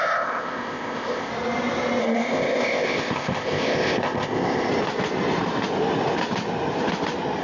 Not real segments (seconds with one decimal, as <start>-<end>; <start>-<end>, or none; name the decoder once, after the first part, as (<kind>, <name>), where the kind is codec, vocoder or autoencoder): 0.0-1.3 (codec, ZipCodec); 2.0-4.7